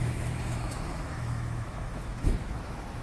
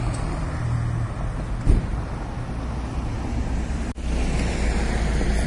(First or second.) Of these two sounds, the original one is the second